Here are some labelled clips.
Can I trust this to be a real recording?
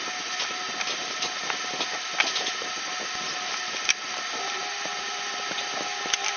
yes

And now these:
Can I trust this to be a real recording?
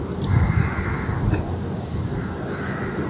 yes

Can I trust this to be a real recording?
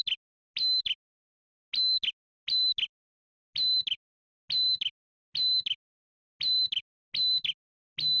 yes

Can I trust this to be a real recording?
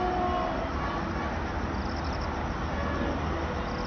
yes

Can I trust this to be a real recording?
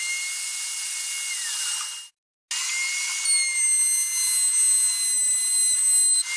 yes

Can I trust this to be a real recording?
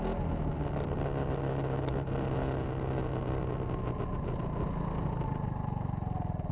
yes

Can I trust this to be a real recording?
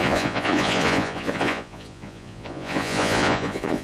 no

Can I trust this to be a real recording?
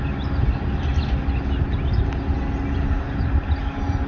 yes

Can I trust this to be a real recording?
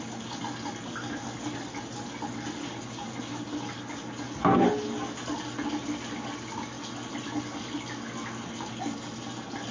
yes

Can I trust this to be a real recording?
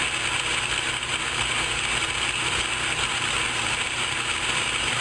yes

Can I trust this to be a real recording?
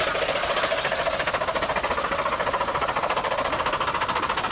yes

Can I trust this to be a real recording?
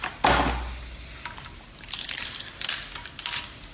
yes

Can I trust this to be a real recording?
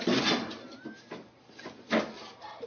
yes